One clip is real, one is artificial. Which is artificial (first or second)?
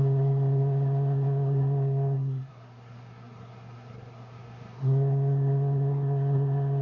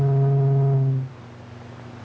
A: first